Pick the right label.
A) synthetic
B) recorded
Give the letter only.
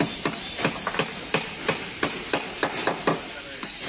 B